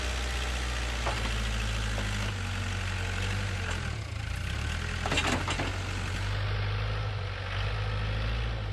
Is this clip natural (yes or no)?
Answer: yes